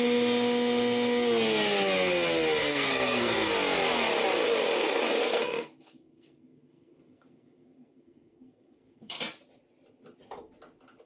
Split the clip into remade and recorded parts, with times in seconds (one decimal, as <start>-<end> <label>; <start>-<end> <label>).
0.0-2.6 recorded; 2.6-3.5 remade; 3.5-5.2 recorded; 5.2-9.2 remade; 9.2-11.1 recorded